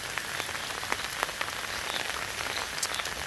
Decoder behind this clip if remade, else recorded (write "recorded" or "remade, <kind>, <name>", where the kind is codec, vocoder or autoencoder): recorded